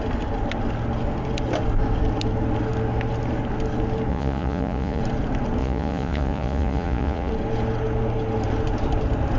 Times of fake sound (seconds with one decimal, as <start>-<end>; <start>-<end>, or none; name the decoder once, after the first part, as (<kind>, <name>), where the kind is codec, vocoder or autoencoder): 4.1-5.0 (vocoder, Vocos); 5.6-7.3